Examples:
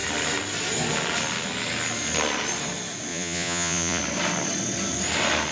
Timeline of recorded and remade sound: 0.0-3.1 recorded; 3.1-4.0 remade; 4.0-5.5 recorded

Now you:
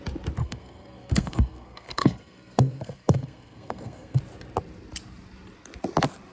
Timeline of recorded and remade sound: 0.0-0.4 recorded; 0.4-4.2 remade; 4.2-6.3 recorded

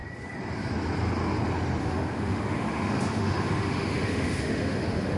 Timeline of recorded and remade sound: 0.0-1.8 recorded; 1.8-5.2 remade

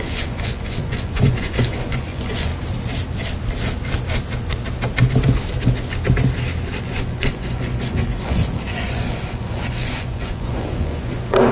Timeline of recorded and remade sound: 0.0-2.5 remade; 2.5-6.8 recorded; 6.8-11.5 remade